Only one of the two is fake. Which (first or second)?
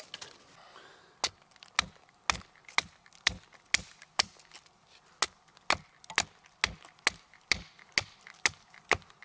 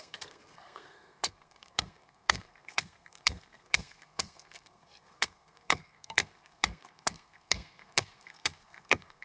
second